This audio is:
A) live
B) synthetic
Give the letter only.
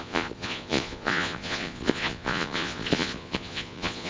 B